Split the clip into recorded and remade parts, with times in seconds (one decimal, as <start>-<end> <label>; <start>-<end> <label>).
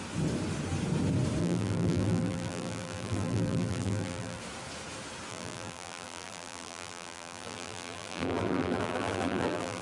0.0-1.4 recorded; 1.4-4.4 remade; 4.4-5.3 recorded; 5.3-9.8 remade